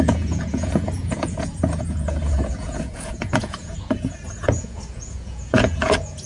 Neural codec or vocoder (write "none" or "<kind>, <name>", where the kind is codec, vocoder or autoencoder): vocoder, Vocos